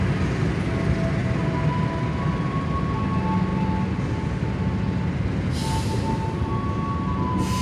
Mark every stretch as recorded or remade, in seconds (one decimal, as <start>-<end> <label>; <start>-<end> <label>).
0.0-7.6 recorded